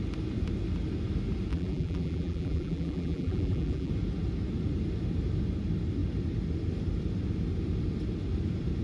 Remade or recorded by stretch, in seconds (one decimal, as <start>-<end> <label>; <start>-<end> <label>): 0.0-1.5 recorded; 1.5-3.9 remade; 3.9-8.8 recorded

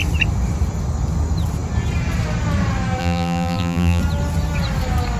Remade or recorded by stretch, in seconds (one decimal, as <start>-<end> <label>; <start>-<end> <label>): 0.0-3.0 recorded; 3.0-4.0 remade; 4.0-5.2 recorded

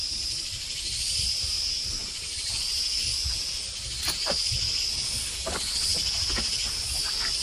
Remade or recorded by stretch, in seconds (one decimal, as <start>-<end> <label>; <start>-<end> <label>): 0.0-1.6 remade; 1.6-2.0 recorded; 2.0-2.6 remade; 2.6-7.4 recorded

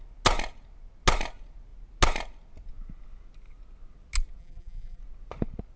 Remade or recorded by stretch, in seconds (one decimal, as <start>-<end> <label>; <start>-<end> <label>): 0.0-4.4 recorded; 4.4-5.0 remade; 5.0-5.8 recorded